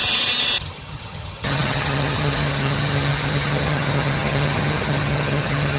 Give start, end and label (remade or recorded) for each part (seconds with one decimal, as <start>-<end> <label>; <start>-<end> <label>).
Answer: 0.0-0.6 recorded; 0.6-5.8 remade